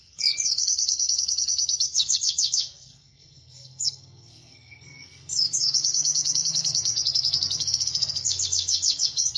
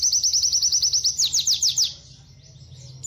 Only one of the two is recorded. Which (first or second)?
second